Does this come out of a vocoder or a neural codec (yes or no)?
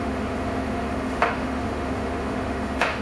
yes